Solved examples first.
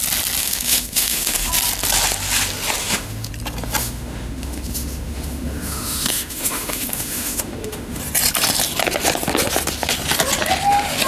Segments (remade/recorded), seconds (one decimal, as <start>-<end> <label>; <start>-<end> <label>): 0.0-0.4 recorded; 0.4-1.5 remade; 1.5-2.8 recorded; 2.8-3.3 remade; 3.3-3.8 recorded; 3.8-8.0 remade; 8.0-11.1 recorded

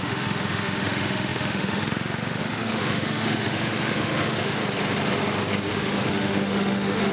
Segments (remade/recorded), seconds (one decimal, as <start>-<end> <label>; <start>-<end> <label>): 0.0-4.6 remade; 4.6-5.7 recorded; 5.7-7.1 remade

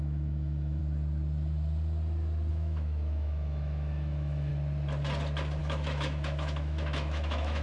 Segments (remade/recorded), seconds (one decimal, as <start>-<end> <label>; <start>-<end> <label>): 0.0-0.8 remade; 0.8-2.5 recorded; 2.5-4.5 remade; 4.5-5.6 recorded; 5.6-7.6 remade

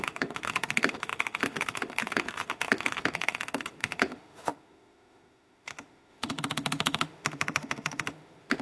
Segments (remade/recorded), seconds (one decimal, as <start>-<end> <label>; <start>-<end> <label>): 0.0-8.6 remade